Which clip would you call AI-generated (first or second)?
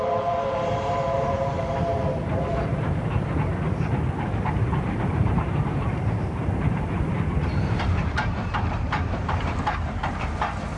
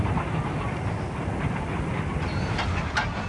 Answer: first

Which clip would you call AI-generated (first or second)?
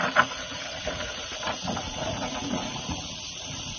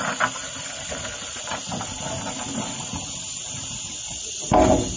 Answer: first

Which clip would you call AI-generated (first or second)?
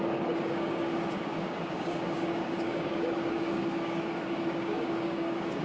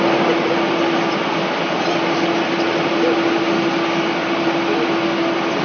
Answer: first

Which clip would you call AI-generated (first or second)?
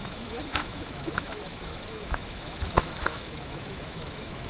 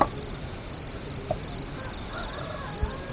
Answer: first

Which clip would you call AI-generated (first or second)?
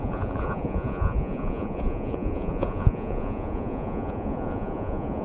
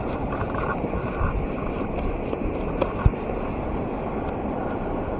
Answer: first